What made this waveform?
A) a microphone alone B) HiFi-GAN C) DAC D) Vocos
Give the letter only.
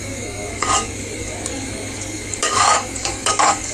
C